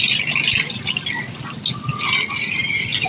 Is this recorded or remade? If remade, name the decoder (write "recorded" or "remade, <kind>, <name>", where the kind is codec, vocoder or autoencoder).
recorded